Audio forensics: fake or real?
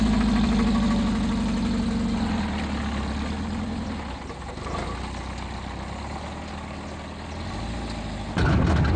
real